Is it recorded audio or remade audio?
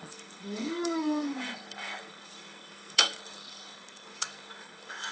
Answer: remade